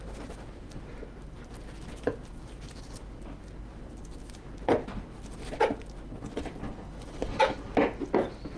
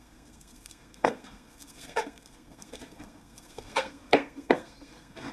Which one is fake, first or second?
second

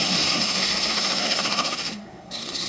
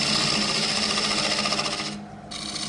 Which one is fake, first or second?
first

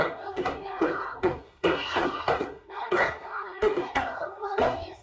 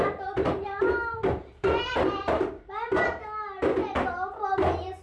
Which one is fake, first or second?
first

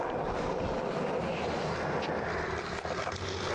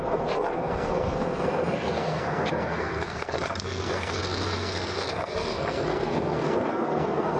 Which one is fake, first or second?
second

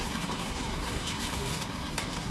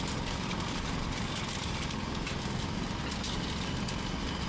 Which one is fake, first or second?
first